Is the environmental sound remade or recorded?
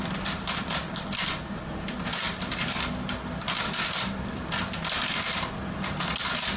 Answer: recorded